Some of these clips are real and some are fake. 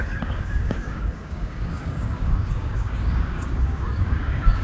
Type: fake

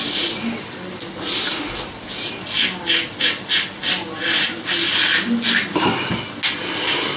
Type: real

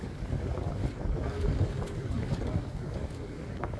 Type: fake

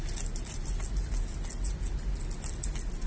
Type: real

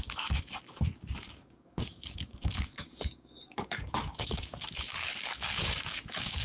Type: fake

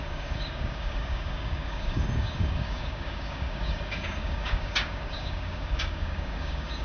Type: fake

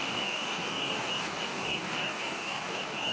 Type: fake